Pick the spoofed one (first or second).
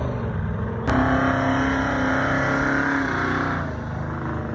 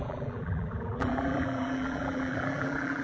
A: second